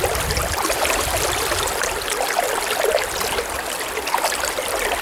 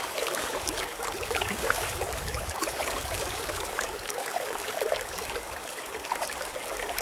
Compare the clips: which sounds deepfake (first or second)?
second